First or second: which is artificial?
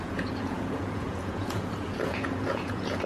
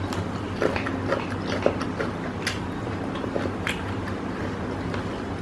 first